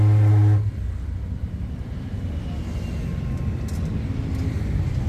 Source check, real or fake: real